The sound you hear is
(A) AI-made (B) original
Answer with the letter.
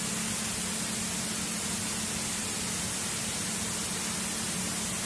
B